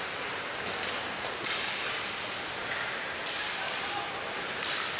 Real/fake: real